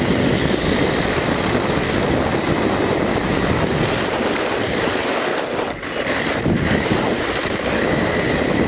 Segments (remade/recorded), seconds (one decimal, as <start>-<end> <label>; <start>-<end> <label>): 0.0-8.7 recorded